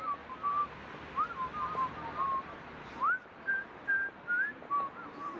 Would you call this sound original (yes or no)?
yes